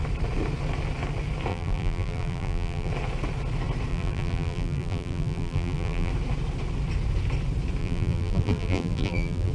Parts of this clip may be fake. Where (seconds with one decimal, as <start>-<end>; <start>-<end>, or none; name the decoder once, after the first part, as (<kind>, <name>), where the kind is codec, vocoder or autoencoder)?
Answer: 1.5-2.9 (vocoder, BigVGAN v2); 3.9-6.1; 7.8-9.5

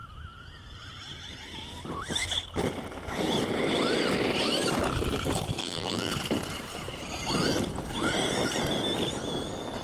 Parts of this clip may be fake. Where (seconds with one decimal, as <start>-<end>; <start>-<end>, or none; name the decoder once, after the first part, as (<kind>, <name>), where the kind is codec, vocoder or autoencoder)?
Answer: 5.6-6.1 (vocoder, BigVGAN v2)

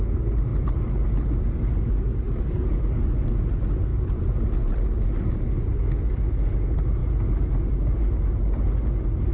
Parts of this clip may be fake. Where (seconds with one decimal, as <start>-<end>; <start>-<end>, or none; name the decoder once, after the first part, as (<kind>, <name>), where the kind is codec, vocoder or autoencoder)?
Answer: none

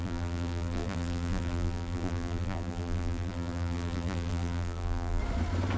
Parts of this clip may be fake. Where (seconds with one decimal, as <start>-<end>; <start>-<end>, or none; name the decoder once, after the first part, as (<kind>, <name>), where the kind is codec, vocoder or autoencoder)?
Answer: 0.0-5.2 (vocoder, BigVGAN v2)

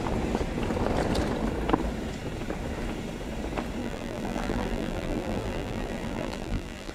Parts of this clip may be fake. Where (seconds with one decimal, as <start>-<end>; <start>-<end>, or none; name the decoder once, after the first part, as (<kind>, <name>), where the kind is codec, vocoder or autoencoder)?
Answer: 3.8-6.9 (vocoder, BigVGAN v2)

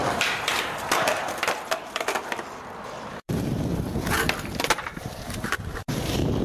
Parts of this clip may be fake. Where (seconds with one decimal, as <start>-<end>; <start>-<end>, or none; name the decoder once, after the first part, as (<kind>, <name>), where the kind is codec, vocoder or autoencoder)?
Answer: 3.1-3.7 (vocoder, BigVGAN v2); 4.7-6.4

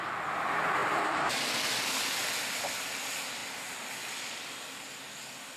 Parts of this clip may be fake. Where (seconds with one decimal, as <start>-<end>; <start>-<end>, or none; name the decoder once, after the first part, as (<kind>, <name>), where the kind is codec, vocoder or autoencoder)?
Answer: none

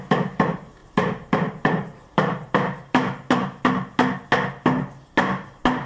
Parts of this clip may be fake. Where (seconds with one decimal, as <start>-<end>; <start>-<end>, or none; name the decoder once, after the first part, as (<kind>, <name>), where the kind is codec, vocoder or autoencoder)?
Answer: 0.0-3.9 (vocoder, BigVGAN v2)